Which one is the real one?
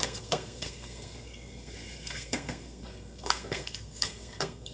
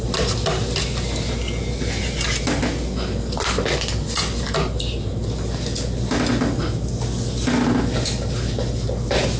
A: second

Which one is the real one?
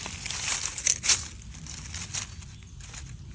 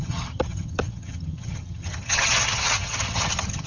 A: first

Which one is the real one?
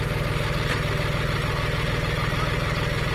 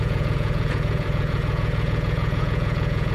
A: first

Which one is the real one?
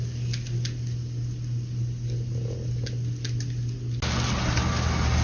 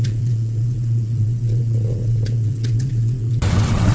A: first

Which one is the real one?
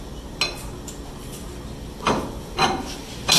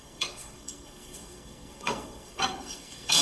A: first